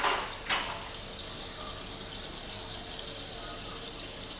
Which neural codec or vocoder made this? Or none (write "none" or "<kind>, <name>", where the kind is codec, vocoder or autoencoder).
none